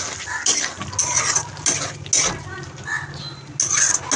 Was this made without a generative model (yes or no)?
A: yes